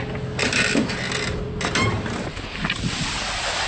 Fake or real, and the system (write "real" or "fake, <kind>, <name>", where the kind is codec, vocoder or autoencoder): real